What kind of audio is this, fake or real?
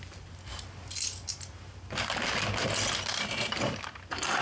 real